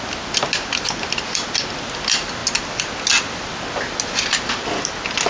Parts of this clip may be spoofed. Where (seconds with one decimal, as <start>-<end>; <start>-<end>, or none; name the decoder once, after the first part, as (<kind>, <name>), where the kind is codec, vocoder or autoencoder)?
none